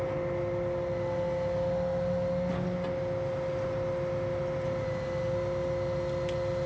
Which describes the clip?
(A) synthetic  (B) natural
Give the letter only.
B